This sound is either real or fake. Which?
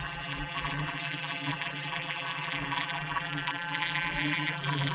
fake